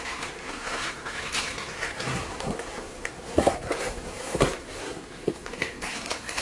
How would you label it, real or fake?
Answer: fake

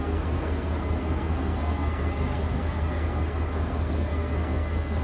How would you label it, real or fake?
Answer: fake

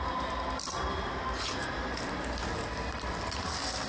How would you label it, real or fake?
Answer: real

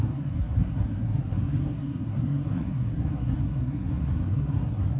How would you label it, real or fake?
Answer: fake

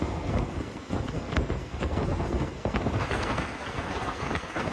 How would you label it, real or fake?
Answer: fake